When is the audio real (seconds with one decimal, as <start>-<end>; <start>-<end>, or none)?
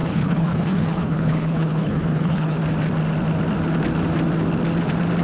2.6-5.2